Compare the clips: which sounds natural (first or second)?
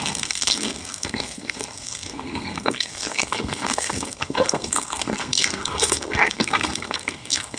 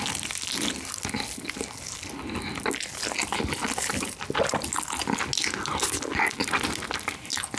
second